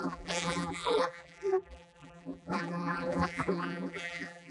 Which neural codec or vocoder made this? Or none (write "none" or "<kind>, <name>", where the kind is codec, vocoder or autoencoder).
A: vocoder, BigVGAN v2